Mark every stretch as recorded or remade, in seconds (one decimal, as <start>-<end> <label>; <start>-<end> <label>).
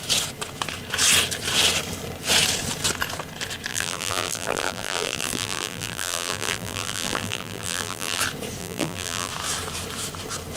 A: 0.0-3.7 recorded; 3.7-8.2 remade; 8.2-8.6 recorded; 8.6-9.3 remade; 9.3-10.6 recorded